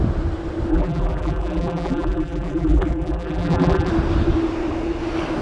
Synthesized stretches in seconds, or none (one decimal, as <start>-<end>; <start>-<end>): 0.7-3.9